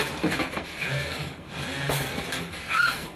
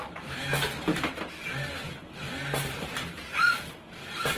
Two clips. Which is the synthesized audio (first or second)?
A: first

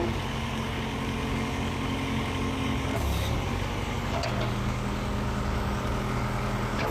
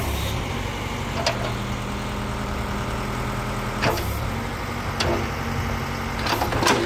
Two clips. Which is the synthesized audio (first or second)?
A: first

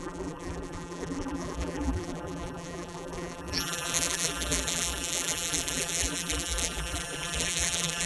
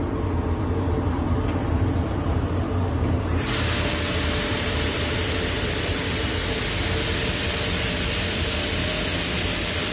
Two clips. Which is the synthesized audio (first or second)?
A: first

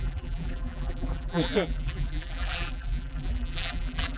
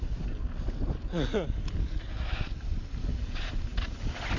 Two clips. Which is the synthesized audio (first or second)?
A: first